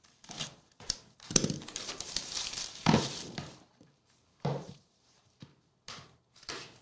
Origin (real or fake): fake